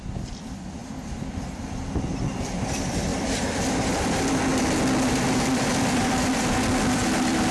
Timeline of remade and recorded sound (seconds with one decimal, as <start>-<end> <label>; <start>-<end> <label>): 0.0-0.8 remade; 0.8-2.0 recorded; 2.0-4.5 remade; 4.5-5.1 recorded; 5.1-7.5 remade